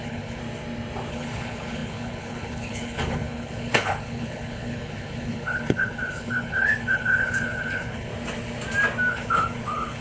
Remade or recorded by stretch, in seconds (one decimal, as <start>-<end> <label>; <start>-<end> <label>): 0.0-0.4 remade; 0.4-1.1 recorded; 1.1-8.1 remade; 8.1-9.1 recorded; 9.1-10.0 remade

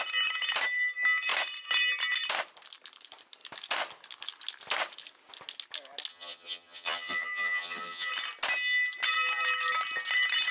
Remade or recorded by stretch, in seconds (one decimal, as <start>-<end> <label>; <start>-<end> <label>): 0.0-6.1 recorded; 6.1-8.1 remade; 8.1-10.5 recorded

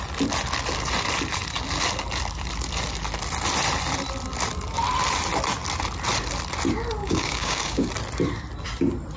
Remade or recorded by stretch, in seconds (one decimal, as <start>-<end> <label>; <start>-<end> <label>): 0.0-7.0 recorded; 7.0-7.9 remade; 7.9-9.2 recorded

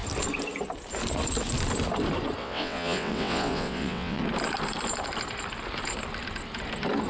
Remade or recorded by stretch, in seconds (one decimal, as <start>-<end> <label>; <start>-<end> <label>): 0.0-2.4 recorded; 2.4-4.2 remade; 4.2-7.1 recorded

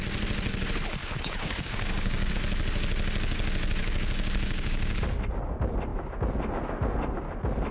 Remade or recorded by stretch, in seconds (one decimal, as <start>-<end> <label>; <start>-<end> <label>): 0.0-1.0 recorded; 1.0-2.3 remade; 2.3-3.8 recorded; 3.8-5.0 remade; 5.0-7.7 recorded

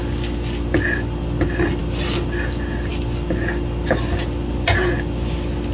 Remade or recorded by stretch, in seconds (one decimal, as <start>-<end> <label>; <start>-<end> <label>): 0.0-5.7 recorded

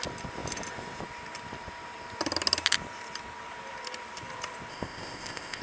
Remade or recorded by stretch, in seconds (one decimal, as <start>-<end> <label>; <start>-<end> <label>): 0.0-4.7 recorded; 4.7-5.6 remade